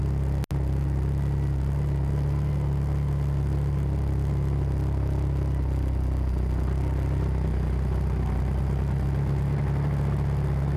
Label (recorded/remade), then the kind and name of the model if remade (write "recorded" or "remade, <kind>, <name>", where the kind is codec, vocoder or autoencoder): recorded